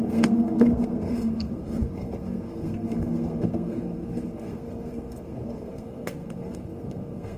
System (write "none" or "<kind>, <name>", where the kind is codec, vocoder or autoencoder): codec, SNAC